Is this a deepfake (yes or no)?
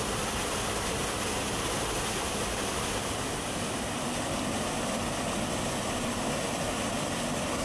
no